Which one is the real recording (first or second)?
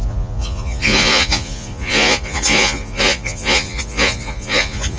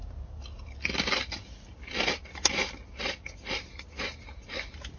second